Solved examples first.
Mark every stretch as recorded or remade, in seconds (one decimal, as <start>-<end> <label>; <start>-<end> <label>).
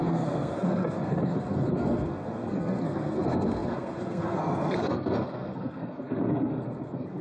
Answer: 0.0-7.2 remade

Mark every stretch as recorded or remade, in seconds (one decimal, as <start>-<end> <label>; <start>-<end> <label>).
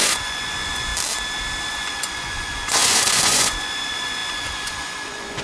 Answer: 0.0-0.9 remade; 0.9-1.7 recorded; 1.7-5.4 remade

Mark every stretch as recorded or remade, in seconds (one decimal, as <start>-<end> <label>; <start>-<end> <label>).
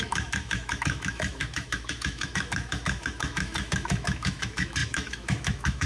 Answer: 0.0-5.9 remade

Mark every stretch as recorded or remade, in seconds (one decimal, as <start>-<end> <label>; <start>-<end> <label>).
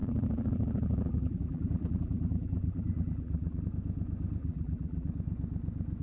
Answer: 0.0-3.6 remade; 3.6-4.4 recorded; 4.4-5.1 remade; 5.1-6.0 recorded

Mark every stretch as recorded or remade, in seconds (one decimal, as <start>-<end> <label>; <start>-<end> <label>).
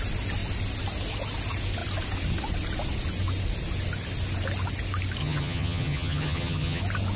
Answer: 0.0-5.2 recorded; 5.2-6.8 remade; 6.8-7.2 recorded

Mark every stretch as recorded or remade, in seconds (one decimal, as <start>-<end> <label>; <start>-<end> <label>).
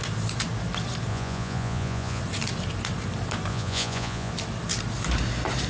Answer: 0.0-1.1 recorded; 1.1-2.2 remade; 2.2-3.5 recorded; 3.5-4.3 remade; 4.3-5.7 recorded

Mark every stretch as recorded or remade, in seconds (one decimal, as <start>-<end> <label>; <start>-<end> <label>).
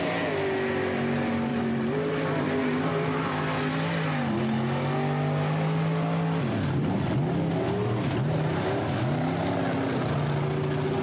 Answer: 0.0-1.5 recorded; 1.5-3.3 remade; 3.3-11.0 recorded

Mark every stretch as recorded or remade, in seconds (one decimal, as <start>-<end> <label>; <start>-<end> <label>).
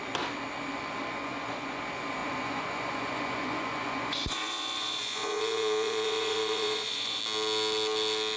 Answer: 0.0-1.2 recorded; 1.2-1.8 remade; 1.8-2.2 recorded; 2.2-7.2 remade; 7.2-8.4 recorded